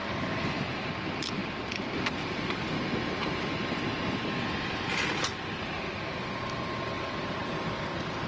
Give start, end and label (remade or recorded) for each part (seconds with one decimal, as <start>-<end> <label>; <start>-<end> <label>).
0.0-0.6 remade; 0.6-8.3 recorded